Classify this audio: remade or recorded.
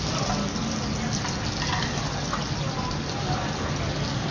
recorded